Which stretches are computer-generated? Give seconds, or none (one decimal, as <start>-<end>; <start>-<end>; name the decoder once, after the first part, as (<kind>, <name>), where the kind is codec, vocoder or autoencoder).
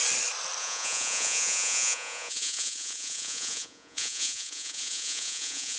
0.6-5.8 (vocoder, Vocos)